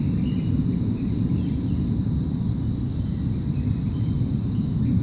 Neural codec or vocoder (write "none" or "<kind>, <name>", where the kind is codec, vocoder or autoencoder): vocoder, BigVGAN v2